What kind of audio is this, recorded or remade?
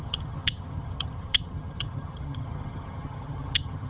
remade